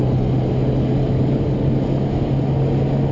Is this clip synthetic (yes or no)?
no